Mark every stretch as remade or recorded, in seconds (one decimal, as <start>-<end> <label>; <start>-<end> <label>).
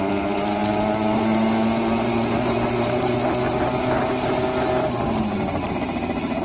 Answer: 0.0-6.4 recorded